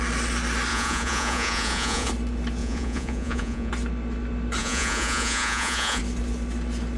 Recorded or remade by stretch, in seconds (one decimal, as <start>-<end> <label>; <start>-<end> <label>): 0.0-0.7 recorded; 0.7-2.1 remade; 2.1-2.6 recorded; 2.6-3.7 remade; 3.7-4.6 recorded; 4.6-6.0 remade; 6.0-7.0 recorded